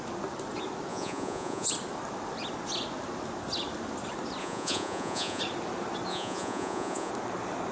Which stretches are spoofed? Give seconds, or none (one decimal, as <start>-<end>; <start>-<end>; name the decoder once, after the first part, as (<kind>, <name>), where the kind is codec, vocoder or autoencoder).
0.9-1.7 (vocoder, Vocos); 4.4-5.4; 6.1-7.1